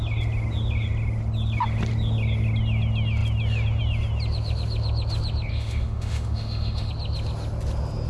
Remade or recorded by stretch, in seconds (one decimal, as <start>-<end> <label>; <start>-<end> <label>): 0.0-5.5 recorded; 5.5-6.9 remade; 6.9-8.1 recorded